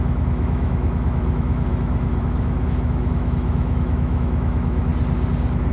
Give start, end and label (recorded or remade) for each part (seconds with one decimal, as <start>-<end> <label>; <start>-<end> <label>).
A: 0.0-4.9 remade; 4.9-5.7 recorded